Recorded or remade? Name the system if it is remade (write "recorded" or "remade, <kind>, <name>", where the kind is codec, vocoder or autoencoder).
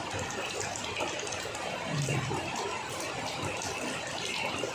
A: recorded